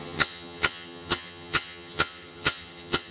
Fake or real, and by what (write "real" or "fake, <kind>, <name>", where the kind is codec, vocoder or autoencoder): fake, vocoder, HiFi-GAN